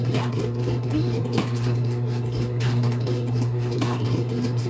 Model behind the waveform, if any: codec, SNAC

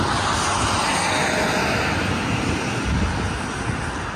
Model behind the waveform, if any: none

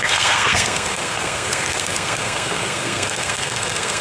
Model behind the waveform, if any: codec, SNAC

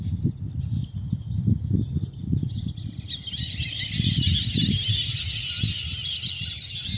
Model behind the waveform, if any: none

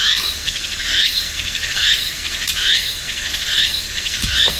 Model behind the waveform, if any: codec, SNAC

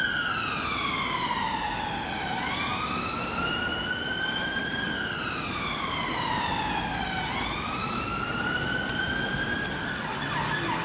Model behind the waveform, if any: none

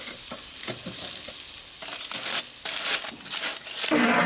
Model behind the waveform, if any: none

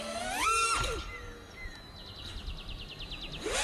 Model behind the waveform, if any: none